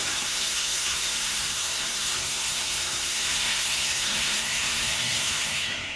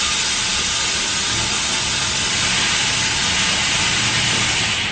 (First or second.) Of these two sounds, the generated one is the first